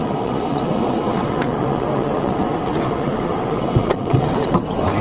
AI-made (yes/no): yes